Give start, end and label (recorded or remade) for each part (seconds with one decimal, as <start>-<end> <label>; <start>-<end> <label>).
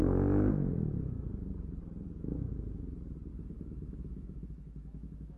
0.0-3.3 recorded; 3.3-5.4 remade